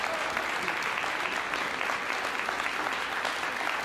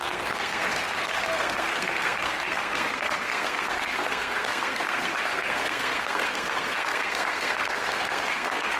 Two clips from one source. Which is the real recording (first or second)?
first